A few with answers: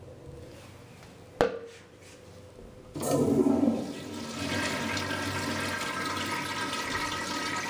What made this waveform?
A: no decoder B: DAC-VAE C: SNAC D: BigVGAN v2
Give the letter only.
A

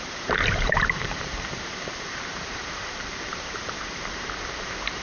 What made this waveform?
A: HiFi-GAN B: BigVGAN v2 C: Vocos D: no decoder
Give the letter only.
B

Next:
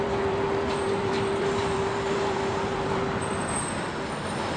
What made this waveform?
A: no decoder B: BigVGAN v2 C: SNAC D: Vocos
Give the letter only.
B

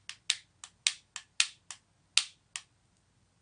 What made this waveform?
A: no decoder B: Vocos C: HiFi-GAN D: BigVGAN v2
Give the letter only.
A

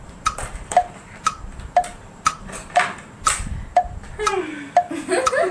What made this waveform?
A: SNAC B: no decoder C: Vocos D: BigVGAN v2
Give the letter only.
D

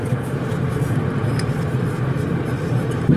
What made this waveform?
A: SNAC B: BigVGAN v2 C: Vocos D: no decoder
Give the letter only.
B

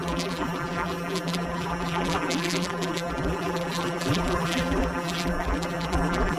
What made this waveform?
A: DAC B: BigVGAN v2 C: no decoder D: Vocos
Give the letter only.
B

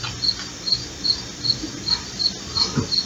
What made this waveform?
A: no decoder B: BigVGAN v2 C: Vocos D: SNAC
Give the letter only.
A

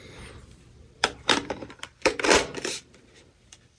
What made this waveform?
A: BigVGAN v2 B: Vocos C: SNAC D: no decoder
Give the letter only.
A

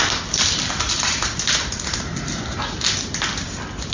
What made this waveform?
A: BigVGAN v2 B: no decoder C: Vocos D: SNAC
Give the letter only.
B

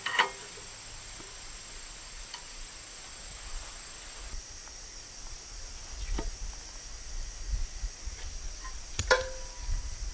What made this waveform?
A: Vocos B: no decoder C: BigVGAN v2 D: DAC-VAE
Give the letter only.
B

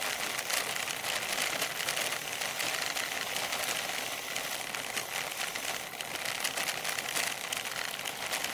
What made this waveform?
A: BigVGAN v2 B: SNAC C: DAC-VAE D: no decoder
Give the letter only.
D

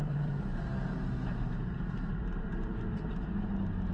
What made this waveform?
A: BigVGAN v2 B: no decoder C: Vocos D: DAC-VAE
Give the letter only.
A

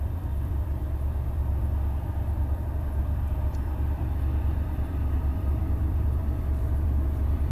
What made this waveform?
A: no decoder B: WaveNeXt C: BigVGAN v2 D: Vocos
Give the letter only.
C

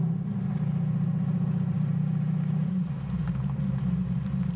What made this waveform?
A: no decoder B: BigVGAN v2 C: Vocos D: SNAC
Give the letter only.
B